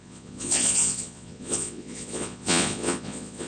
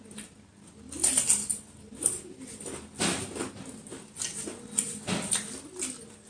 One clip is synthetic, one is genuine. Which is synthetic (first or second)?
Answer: first